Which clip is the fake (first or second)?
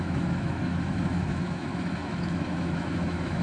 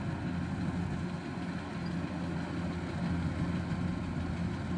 first